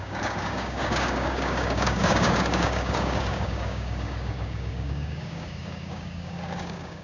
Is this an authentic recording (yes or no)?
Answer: no